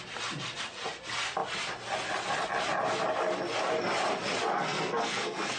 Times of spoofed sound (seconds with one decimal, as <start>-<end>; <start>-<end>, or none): 4.5-5.6